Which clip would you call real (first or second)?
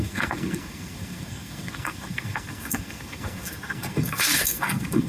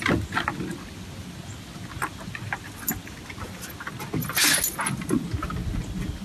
second